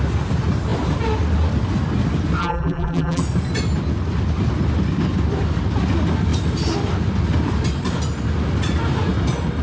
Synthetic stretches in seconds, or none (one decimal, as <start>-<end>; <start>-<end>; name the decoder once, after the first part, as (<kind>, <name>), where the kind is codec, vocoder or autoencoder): 2.4-3.2 (vocoder, BigVGAN v2)